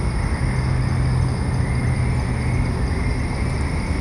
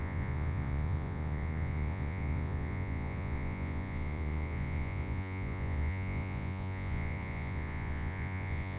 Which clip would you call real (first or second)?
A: first